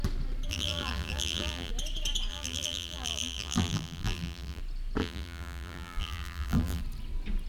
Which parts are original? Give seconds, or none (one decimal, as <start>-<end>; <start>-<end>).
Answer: 0.0-0.5; 1.7-2.3; 4.6-5.0; 6.8-7.5